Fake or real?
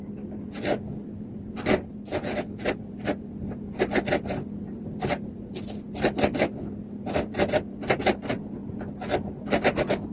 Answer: real